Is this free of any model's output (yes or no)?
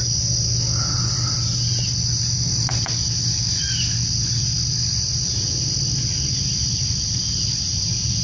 yes